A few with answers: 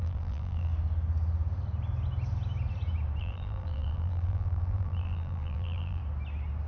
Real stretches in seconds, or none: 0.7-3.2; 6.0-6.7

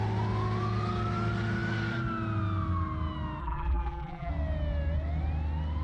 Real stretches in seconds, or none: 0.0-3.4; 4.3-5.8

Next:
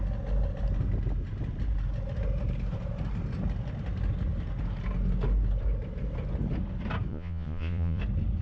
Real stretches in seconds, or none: 0.0-7.1; 8.0-8.4

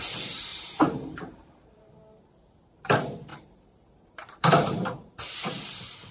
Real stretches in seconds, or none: 0.0-0.5; 2.0-3.3; 5.1-6.1